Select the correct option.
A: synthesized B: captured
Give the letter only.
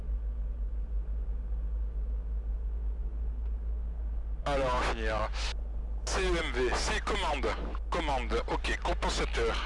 B